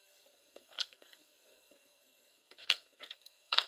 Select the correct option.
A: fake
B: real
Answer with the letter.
A